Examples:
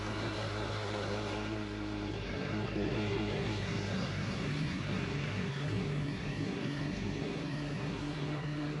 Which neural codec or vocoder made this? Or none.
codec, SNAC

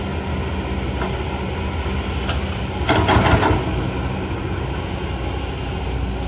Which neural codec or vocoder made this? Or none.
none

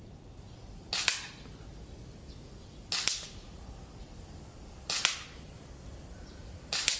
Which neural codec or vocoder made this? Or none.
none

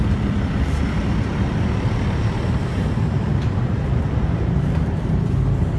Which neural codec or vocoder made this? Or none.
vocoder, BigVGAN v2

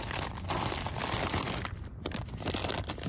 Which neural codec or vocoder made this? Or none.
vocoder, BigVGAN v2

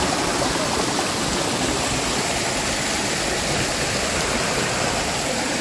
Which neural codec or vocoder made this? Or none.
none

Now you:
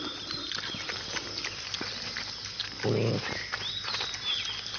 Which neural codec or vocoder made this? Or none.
none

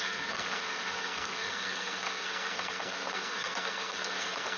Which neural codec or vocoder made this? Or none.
codec, SNAC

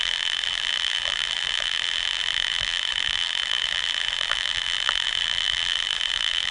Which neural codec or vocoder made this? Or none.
vocoder, BigVGAN v2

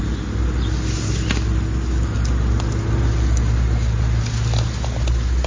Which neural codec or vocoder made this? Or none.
none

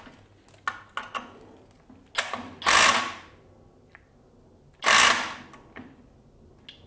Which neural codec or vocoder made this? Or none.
none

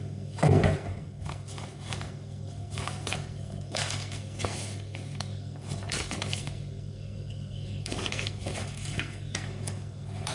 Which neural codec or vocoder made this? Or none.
codec, SNAC